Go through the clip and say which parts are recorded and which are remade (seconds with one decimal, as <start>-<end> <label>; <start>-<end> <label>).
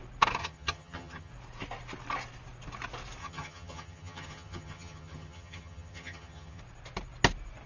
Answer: 0.0-0.4 recorded; 0.4-1.3 remade; 1.3-3.2 recorded; 3.2-6.6 remade; 6.6-7.7 recorded